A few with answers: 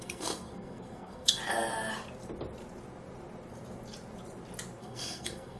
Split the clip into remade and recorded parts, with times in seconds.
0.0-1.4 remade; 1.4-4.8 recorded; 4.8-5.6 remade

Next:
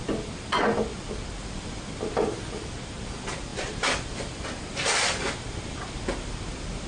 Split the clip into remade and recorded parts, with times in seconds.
0.0-1.4 recorded; 1.4-2.1 remade; 2.1-6.9 recorded

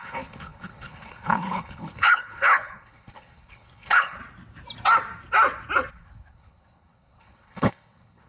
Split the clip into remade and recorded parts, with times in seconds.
0.0-4.2 remade; 4.2-5.9 recorded; 5.9-8.3 remade

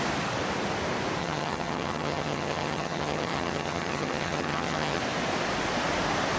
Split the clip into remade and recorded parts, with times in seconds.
0.0-1.2 recorded; 1.2-5.0 remade; 5.0-6.4 recorded

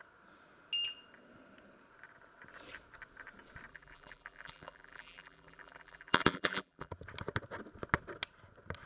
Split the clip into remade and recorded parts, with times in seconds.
0.0-3.7 recorded; 3.7-6.9 remade; 6.9-8.9 recorded

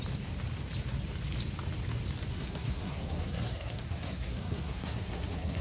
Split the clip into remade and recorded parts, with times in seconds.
0.0-2.3 recorded; 2.3-5.6 remade